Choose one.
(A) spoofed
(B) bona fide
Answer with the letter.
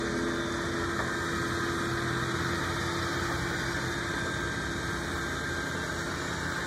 B